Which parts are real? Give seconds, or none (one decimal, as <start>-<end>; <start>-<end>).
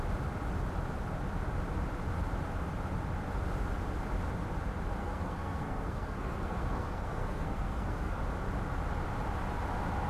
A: 0.0-5.0; 8.2-10.1